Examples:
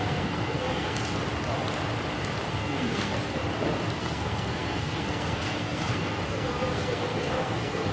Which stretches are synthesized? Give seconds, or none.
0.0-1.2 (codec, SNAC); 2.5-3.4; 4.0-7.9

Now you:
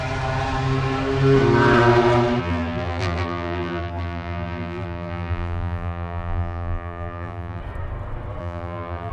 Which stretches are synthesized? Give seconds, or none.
2.4-7.6 (vocoder, BigVGAN v2); 8.4-9.1

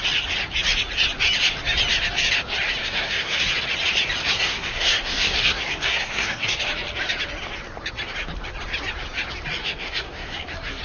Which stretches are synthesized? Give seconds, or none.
2.8-3.5 (codec, SNAC); 4.2-6.6; 9.6-10.8

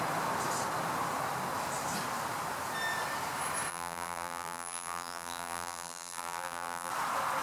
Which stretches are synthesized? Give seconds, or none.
3.7-6.9 (vocoder, BigVGAN v2)

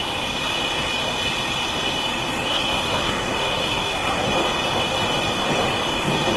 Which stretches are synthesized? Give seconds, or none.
2.5-4.3 (codec, SNAC)

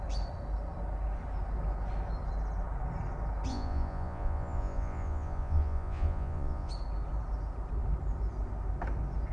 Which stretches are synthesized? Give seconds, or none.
3.5-6.7 (vocoder, Vocos)